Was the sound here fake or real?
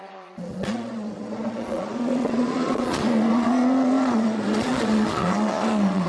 fake